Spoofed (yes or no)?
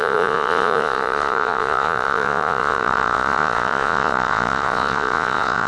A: yes